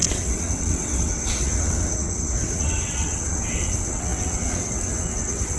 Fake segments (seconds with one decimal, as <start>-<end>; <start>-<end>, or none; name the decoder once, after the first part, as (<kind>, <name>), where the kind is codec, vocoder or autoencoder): 0.0-5.6 (vocoder, WaveNeXt)

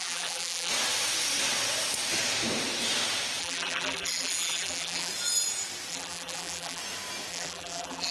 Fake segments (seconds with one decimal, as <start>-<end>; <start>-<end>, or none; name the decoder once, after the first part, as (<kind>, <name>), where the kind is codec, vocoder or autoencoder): 0.0-0.7 (vocoder, BigVGAN v2); 3.4-5.1; 5.9-6.8; 7.3-8.1

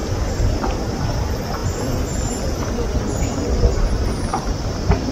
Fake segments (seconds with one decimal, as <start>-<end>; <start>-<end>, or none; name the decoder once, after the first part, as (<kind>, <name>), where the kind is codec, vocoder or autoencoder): 0.0-1.0 (vocoder, BigVGAN v2); 1.6-2.7; 4.3-5.1

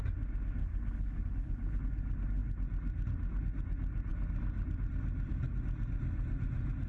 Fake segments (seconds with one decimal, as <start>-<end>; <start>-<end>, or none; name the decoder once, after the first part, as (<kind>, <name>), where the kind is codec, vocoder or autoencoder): 0.6-1.8 (codec, HILCodec)

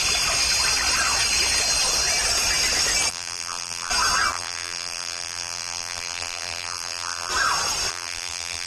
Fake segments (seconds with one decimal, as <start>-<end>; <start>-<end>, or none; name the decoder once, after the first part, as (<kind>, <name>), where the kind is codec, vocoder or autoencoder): 3.1-3.9 (vocoder, BigVGAN v2); 4.3-7.3; 7.9-8.7